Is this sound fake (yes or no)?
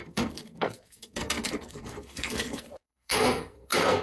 yes